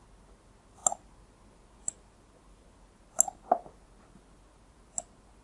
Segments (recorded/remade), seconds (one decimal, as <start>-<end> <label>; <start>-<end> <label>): 0.0-5.4 recorded